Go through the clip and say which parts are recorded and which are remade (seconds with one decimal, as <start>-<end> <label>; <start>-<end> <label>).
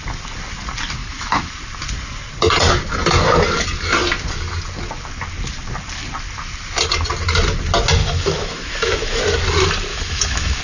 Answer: 0.0-1.0 recorded; 1.0-1.5 remade; 1.5-8.0 recorded; 8.0-9.2 remade; 9.2-9.9 recorded; 9.9-10.6 remade